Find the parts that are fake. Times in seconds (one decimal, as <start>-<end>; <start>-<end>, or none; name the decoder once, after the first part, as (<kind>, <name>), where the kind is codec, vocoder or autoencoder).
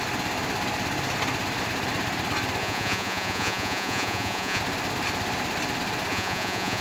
2.6-4.6 (vocoder, Vocos); 6.1-6.8